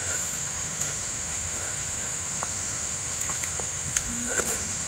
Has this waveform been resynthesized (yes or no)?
yes